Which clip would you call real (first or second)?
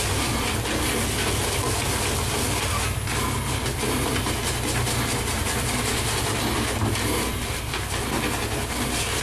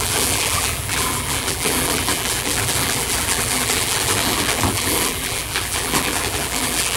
first